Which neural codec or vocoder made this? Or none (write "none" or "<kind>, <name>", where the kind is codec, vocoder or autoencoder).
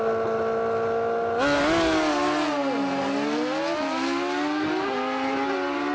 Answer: none